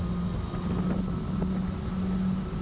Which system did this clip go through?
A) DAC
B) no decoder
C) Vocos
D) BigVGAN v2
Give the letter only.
B